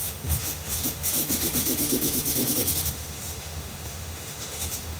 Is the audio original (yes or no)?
no